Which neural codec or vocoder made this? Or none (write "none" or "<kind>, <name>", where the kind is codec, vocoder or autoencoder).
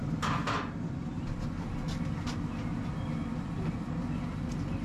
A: none